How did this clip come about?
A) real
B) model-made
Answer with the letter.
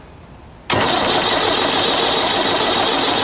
A